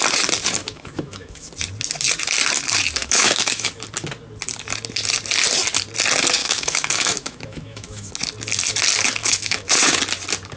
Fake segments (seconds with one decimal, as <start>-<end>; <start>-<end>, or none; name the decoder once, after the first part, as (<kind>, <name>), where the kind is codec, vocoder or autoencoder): 0.6-1.5 (autoencoder, DAC-VAE); 3.0-3.7; 6.4-8.1; 9.2-10.0